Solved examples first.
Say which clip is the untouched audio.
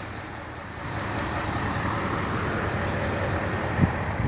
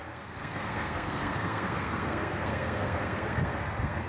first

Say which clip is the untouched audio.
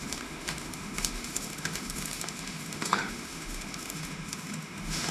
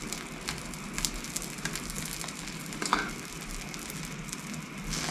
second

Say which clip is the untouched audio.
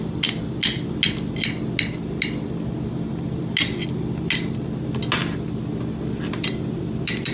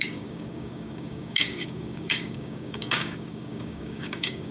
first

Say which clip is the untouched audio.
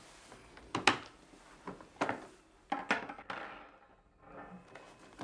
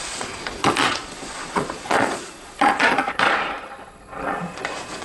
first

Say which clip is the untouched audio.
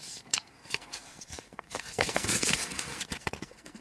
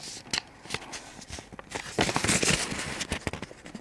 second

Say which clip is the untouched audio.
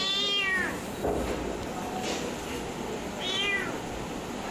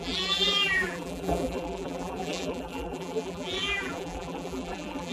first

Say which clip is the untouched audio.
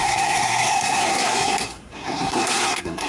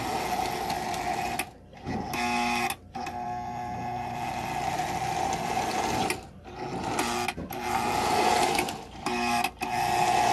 second